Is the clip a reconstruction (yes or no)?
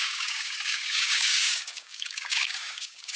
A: yes